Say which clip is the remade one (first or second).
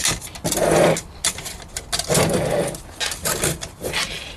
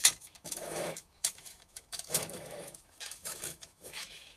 second